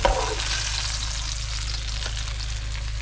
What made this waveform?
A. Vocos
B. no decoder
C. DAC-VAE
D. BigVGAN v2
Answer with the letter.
B